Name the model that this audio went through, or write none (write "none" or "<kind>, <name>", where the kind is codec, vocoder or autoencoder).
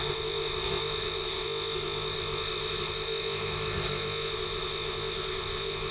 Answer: codec, ZipCodec